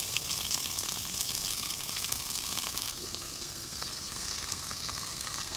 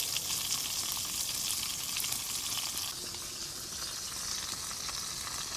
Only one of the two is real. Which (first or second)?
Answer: second